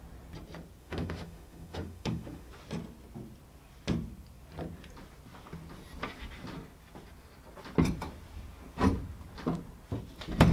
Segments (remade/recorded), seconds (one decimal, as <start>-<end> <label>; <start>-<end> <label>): 0.0-0.8 recorded; 0.8-2.5 remade; 2.5-10.5 recorded